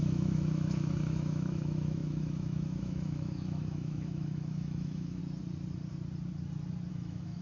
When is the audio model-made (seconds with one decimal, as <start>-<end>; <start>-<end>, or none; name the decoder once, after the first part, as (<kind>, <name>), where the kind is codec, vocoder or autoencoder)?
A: 0.0-5.2 (autoencoder, DAC-VAE); 6.9-7.4